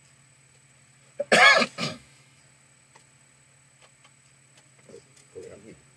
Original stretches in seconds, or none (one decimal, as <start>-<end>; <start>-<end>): 0.0-1.8; 2.4-6.0